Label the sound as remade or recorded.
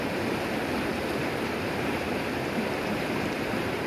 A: remade